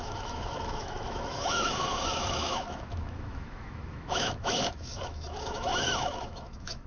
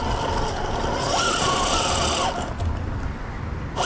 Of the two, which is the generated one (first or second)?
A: first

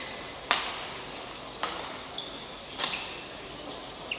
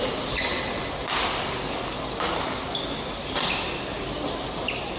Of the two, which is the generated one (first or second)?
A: second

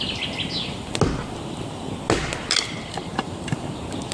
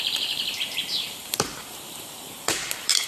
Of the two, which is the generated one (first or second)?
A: second